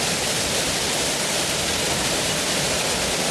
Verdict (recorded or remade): recorded